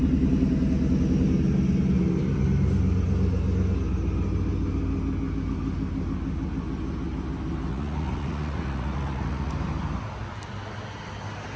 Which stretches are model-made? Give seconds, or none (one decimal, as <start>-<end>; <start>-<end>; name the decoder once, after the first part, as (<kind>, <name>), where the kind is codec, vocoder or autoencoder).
7.7-9.5 (vocoder, Vocos)

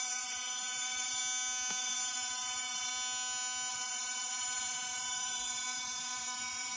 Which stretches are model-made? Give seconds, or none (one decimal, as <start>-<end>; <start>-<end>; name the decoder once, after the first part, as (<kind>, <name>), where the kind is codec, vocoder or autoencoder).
0.0-1.2 (vocoder, Vocos); 1.8-2.9; 3.7-6.8

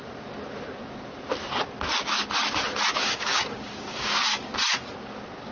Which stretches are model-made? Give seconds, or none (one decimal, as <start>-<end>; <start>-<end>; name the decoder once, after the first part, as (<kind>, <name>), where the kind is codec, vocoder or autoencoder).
3.0-4.5 (codec, DAC)

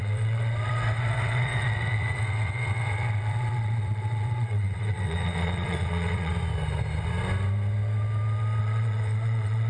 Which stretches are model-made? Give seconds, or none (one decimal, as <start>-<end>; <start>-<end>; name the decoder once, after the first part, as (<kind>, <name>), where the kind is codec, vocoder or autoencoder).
0.0-6.3 (vocoder, WaveNeXt); 8.6-9.7

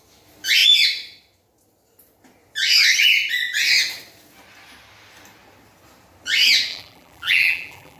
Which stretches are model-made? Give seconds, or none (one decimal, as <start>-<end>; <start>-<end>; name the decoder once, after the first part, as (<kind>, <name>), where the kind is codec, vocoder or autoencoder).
6.7-8.0 (vocoder, BigVGAN v2)

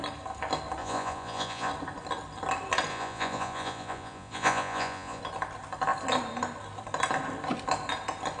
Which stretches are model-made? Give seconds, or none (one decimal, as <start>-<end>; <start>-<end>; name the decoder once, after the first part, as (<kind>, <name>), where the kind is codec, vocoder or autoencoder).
0.8-1.7 (vocoder, Vocos); 2.9-5.2

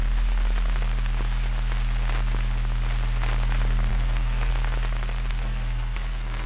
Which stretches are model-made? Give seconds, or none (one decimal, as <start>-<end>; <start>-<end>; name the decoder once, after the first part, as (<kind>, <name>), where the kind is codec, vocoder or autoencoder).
3.9-4.5 (codec, SNAC); 5.3-6.5